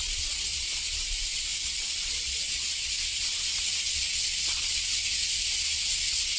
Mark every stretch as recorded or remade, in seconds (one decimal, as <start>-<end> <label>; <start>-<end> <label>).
0.0-6.4 remade